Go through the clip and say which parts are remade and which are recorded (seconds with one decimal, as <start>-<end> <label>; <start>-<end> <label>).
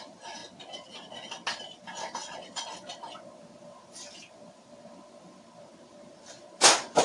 0.0-0.4 remade; 0.4-1.6 recorded; 1.6-7.0 remade